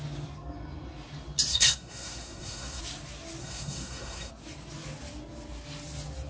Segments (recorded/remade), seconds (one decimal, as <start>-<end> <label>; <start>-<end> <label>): 0.0-1.5 recorded; 1.5-2.8 remade; 2.8-3.4 recorded; 3.4-4.3 remade; 4.3-6.3 recorded